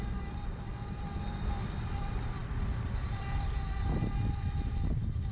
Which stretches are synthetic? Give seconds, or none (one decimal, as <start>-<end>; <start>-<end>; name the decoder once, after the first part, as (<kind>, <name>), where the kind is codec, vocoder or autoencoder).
2.4-3.4 (vocoder, BigVGAN v2)